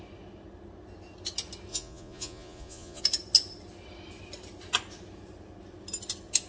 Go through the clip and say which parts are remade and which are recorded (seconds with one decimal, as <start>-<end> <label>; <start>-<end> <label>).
0.0-1.7 recorded; 1.7-3.0 remade; 3.0-6.5 recorded